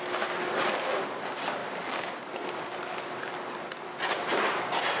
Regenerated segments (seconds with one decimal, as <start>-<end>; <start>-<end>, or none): none